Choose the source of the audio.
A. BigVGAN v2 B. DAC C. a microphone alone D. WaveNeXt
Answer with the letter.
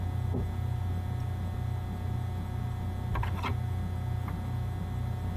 C